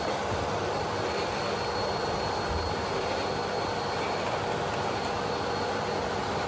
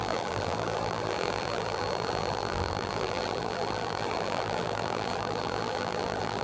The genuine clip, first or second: first